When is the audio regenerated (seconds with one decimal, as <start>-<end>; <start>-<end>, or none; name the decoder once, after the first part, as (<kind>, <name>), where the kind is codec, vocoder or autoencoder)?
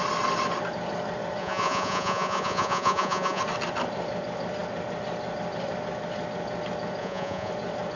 1.4-3.4 (vocoder, Vocos); 7.0-7.5